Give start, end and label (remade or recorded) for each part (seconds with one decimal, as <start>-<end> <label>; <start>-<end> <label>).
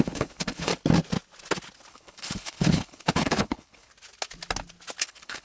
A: 0.0-0.7 remade; 0.7-1.9 recorded; 1.9-3.9 remade; 3.9-5.0 recorded; 5.0-5.4 remade